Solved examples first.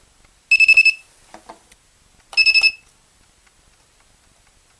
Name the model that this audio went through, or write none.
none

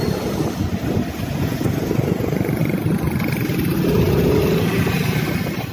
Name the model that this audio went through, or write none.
none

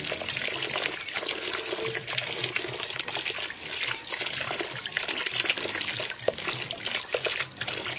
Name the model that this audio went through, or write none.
none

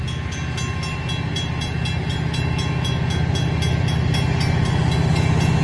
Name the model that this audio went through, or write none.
none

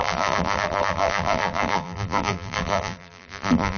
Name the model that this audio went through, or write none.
vocoder, BigVGAN v2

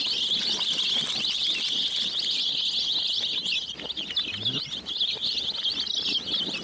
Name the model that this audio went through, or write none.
none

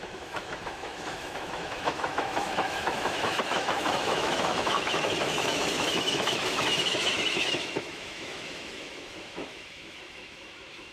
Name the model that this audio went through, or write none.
autoencoder, DAC-VAE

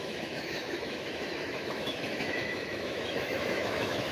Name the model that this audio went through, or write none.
autoencoder, DAC-VAE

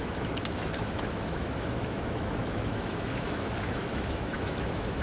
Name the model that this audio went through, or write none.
autoencoder, DAC-VAE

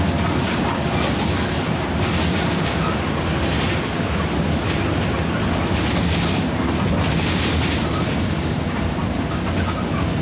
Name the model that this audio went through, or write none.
none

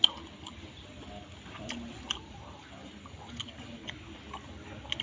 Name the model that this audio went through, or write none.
none